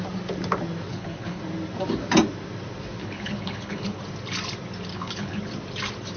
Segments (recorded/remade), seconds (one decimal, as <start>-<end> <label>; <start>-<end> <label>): 0.0-0.9 recorded; 0.9-1.4 remade; 1.4-3.0 recorded; 3.0-4.0 remade; 4.0-4.9 recorded; 4.9-5.4 remade; 5.4-6.2 recorded